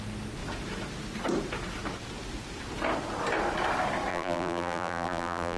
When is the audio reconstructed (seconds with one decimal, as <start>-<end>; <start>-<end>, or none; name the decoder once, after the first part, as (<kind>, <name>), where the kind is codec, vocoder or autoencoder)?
4.1-5.6 (vocoder, BigVGAN v2)